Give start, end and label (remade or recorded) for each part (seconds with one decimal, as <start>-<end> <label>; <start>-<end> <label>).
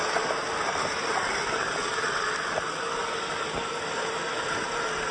0.0-5.1 recorded